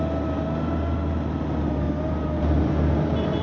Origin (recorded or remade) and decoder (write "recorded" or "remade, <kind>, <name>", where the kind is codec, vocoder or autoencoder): recorded